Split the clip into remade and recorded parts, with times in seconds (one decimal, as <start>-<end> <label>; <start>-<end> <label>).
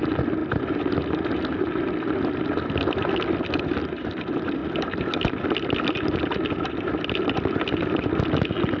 0.0-8.8 recorded